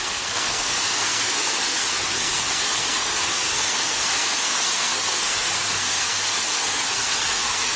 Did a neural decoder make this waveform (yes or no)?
yes